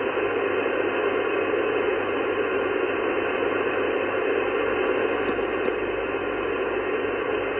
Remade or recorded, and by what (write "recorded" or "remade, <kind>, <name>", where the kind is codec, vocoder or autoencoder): recorded